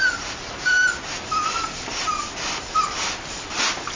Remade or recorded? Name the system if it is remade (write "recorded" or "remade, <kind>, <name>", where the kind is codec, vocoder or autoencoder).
recorded